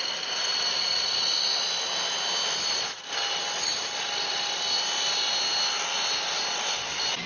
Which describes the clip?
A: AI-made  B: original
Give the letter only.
B